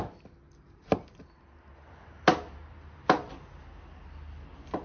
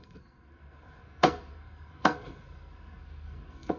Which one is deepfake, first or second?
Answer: second